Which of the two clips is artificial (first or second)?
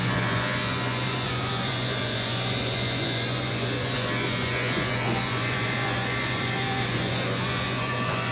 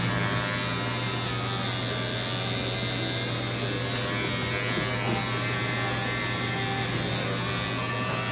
first